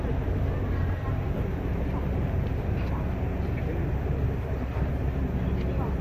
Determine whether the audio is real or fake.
fake